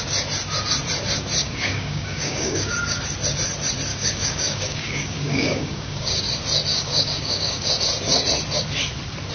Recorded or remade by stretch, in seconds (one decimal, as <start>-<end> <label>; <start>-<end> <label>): 0.0-1.4 recorded; 1.4-2.7 remade; 2.7-3.9 recorded; 3.9-6.2 remade; 6.2-6.7 recorded; 6.7-7.7 remade; 7.7-9.3 recorded